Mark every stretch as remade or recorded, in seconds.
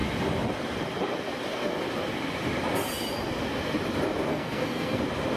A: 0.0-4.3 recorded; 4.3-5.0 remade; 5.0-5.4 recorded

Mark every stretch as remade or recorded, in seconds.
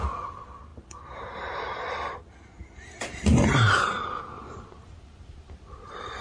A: 0.0-6.2 recorded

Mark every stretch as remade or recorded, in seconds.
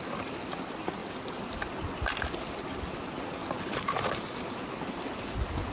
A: 0.0-5.7 recorded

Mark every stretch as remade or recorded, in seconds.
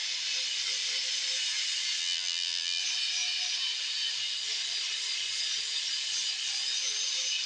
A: 0.0-2.0 recorded; 2.0-2.8 remade; 2.8-7.5 recorded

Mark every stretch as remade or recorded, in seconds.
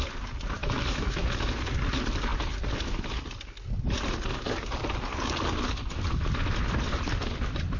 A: 0.0-0.6 recorded; 0.6-1.3 remade; 1.3-7.8 recorded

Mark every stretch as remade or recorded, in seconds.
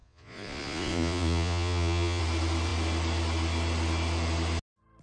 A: 0.0-2.2 remade; 2.2-5.0 recorded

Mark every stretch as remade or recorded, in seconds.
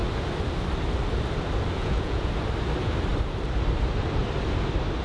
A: 0.0-1.8 recorded; 1.8-2.3 remade; 2.3-5.0 recorded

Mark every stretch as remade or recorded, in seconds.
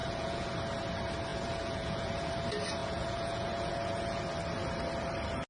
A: 0.0-0.5 remade; 0.5-1.3 recorded; 1.3-2.3 remade; 2.3-2.8 recorded; 2.8-4.2 remade; 4.2-5.5 recorded